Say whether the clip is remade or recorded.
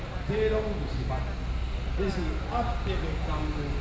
recorded